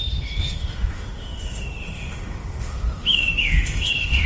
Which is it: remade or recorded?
remade